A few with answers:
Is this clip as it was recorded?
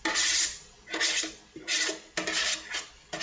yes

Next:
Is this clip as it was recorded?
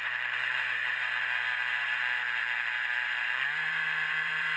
no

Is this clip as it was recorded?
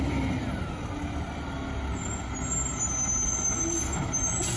yes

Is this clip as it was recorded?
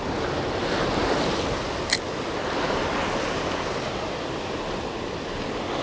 yes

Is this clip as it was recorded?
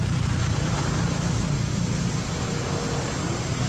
yes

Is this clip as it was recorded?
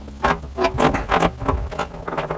yes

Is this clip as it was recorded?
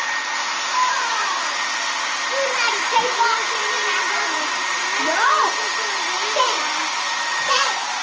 yes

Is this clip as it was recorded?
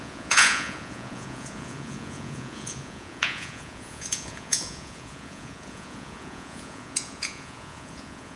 no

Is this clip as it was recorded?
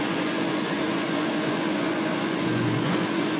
no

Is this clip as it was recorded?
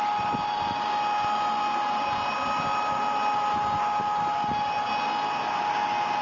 yes